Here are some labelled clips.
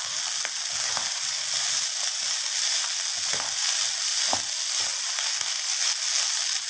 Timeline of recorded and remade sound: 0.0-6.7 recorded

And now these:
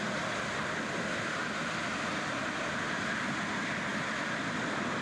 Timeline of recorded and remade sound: 0.0-5.0 recorded